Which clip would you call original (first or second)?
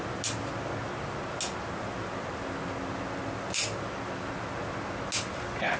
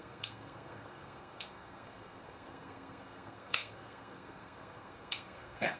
first